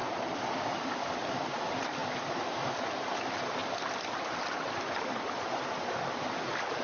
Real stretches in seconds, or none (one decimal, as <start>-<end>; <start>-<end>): 0.0-6.8